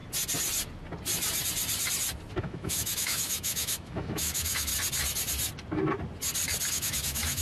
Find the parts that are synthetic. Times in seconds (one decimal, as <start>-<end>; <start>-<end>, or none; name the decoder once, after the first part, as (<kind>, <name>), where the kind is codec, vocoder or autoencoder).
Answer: 2.4-4.7 (autoencoder, DAC-VAE); 6.7-7.4